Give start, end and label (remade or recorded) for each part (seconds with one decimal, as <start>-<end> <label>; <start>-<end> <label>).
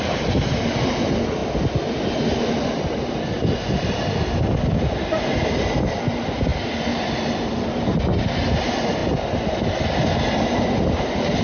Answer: 0.0-11.4 recorded